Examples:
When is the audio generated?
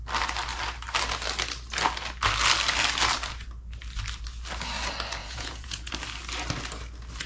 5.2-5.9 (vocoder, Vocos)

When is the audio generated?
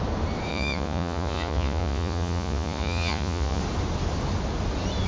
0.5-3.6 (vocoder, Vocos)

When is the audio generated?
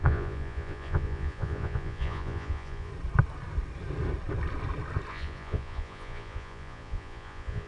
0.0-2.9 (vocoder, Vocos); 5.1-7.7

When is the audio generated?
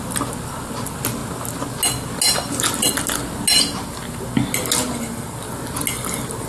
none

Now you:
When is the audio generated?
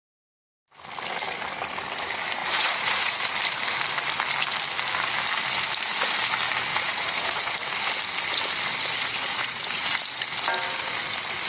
2.4-3.2 (vocoder, Vocos); 6.7-7.5; 9.0-9.6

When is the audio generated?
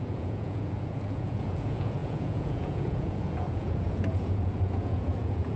0.0-5.6 (vocoder, Vocos)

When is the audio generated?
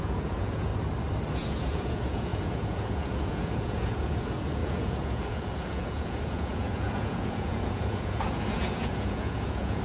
0.0-0.7 (vocoder, Vocos); 1.3-9.8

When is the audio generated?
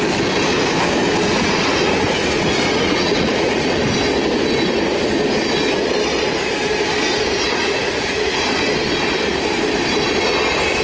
1.3-3.8 (vocoder, Vocos); 7.5-8.6